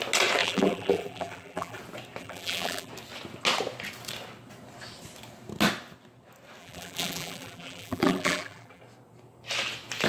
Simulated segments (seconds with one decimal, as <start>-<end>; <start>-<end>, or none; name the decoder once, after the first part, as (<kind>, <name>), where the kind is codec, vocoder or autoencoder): 0.4-1.8 (vocoder, BigVGAN v2); 2.2-2.9; 6.6-8.8